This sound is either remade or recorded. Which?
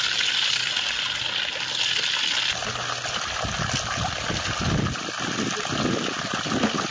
recorded